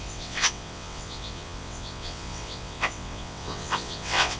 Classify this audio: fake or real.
fake